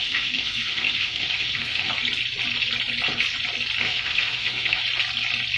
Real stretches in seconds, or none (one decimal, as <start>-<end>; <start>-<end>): 1.9-3.8; 4.8-5.6